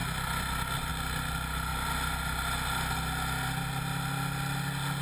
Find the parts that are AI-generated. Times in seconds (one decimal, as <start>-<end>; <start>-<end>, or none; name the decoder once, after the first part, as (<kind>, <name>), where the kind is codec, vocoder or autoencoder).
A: none